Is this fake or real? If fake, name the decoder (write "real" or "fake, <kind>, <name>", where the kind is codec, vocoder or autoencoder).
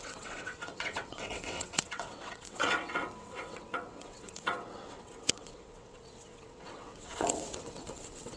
fake, vocoder, WaveNeXt